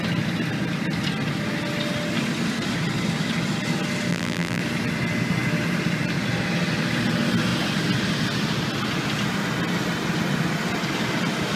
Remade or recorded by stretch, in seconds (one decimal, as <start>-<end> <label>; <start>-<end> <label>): 0.0-4.1 recorded; 4.1-4.6 remade; 4.6-11.6 recorded